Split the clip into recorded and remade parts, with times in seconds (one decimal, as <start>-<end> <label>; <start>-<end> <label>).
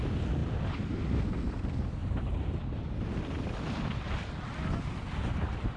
0.0-0.4 recorded; 0.4-1.2 remade; 1.2-2.0 recorded; 2.0-5.8 remade